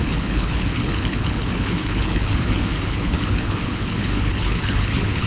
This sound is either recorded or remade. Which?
remade